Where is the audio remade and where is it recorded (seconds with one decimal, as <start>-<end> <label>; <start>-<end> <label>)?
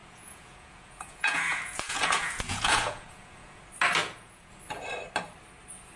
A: 0.0-3.6 remade; 3.6-4.0 recorded; 4.0-4.5 remade; 4.5-6.0 recorded